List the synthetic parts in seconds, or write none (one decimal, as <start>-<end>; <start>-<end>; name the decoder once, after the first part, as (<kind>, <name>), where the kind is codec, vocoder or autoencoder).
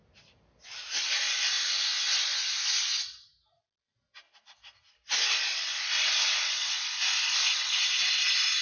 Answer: none